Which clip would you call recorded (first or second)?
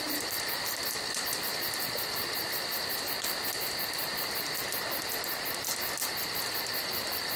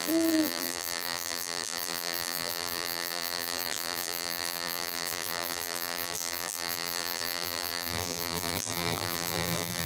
first